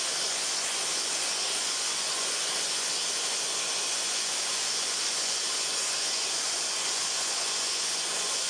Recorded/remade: remade